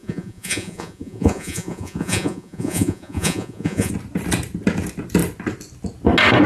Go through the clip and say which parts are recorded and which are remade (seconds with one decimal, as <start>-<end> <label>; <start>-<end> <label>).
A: 0.0-3.9 remade; 3.9-6.5 recorded